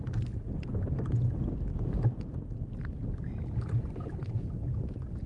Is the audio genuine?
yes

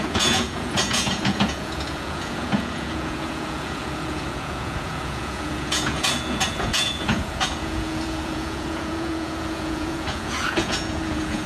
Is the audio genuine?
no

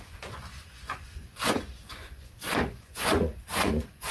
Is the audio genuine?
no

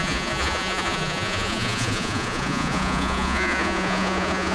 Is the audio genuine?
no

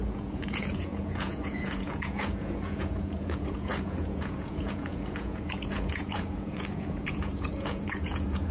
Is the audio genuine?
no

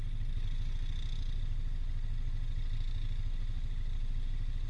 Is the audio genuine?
yes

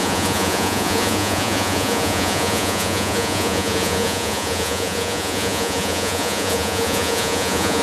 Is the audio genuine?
no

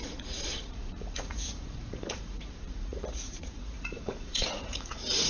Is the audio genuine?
no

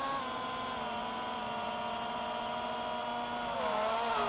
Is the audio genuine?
yes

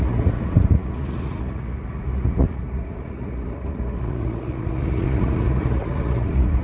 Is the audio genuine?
no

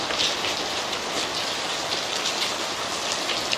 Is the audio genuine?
yes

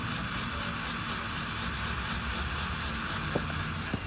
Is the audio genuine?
yes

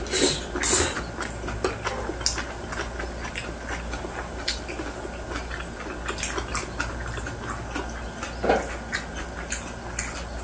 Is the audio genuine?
yes